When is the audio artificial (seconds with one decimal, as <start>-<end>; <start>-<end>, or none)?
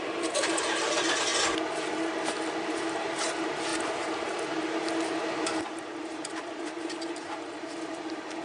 0.0-1.3; 2.7-8.4